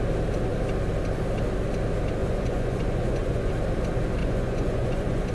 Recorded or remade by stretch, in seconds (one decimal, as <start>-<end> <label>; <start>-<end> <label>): 0.0-2.2 recorded; 2.2-3.5 remade; 3.5-4.2 recorded; 4.2-5.3 remade